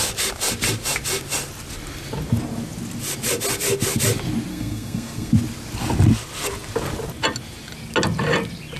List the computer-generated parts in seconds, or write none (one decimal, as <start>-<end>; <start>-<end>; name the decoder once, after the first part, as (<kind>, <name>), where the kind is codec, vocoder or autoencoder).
4.5-5.3 (codec, SNAC)